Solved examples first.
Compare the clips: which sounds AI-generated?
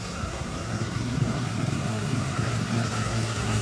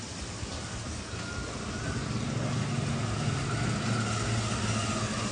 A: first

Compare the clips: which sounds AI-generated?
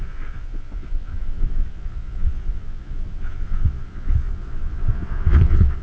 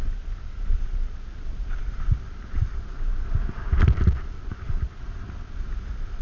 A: first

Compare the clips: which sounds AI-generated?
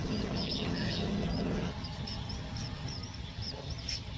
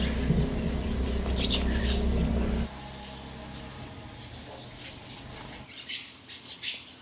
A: first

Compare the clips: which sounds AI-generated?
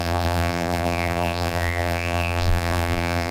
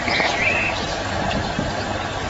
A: first